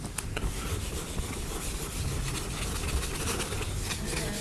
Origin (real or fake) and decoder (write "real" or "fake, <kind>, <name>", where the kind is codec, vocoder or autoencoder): real